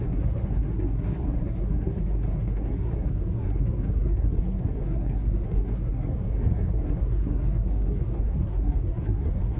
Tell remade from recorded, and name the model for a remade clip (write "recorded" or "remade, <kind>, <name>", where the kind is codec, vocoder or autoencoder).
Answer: remade, codec, SNAC